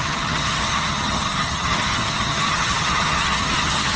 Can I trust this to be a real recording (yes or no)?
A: no